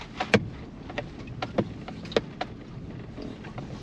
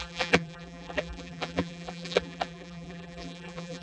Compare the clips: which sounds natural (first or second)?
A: first